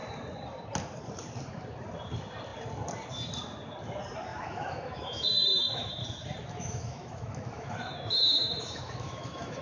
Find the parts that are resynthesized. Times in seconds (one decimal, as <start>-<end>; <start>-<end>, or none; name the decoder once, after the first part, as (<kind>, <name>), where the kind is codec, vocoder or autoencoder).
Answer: 4.3-5.9 (autoencoder, DAC-VAE); 6.4-9.6